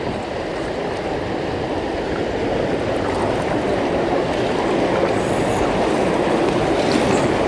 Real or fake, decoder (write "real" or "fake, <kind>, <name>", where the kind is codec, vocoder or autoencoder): real